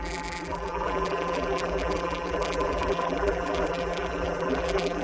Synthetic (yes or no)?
yes